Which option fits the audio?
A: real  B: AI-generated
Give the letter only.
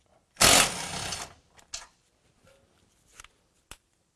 A